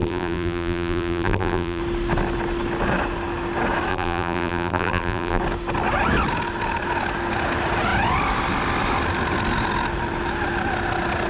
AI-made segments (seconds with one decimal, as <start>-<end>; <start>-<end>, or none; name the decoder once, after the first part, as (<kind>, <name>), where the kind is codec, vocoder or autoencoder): 0.0-1.8 (vocoder, BigVGAN v2); 3.9-5.4